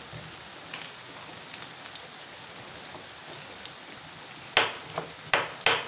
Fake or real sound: real